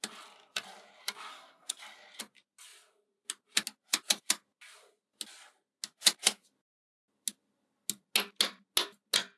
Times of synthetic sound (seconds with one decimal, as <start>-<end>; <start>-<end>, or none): 1.3-1.8